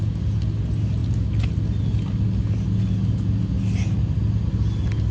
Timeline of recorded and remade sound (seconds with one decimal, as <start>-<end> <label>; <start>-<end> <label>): 0.0-5.1 recorded